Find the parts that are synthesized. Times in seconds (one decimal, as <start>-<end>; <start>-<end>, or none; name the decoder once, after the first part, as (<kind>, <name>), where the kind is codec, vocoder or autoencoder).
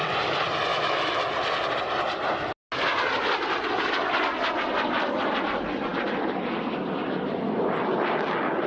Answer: 0.7-1.2 (autoencoder, DAC-VAE)